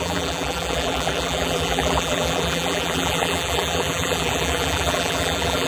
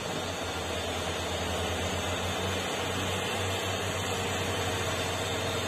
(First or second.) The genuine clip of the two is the second